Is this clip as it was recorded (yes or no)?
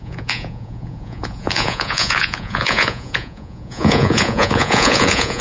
no